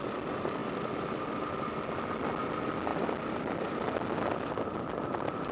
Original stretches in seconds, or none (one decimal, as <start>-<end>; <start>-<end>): 0.0-0.6; 1.8-2.9; 3.9-5.5